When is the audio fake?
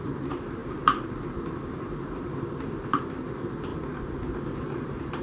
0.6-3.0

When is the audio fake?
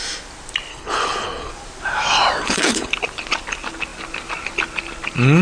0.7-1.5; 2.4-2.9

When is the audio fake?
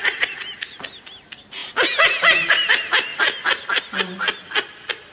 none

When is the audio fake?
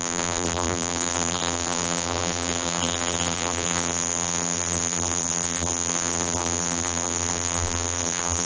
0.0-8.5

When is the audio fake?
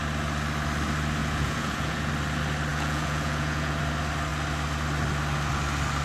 1.2-2.1; 2.7-3.8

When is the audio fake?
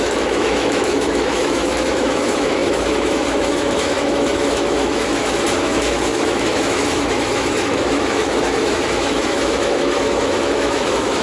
0.0-11.2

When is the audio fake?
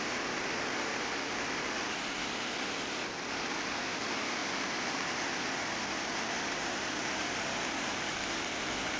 none